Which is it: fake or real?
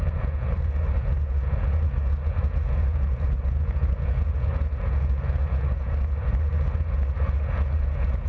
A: fake